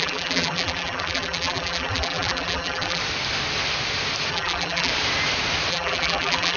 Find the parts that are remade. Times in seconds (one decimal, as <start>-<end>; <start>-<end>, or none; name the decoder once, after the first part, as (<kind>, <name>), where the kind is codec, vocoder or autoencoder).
0.0-3.0 (vocoder, BigVGAN v2); 4.3-4.9; 5.7-6.6